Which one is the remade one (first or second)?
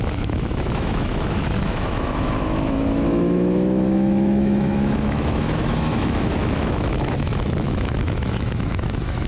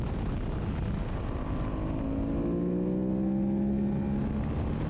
first